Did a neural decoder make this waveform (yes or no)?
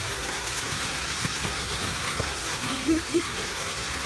yes